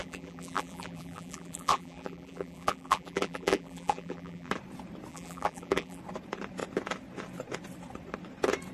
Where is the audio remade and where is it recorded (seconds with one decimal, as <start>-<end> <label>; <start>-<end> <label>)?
0.0-4.5 remade; 4.5-5.1 recorded; 5.1-6.0 remade; 6.0-8.7 recorded